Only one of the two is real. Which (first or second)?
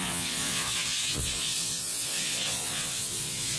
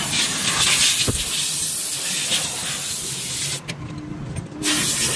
second